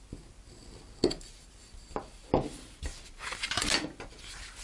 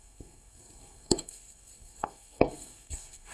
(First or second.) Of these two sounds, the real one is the first